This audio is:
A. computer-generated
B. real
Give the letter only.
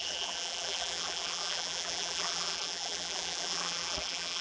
A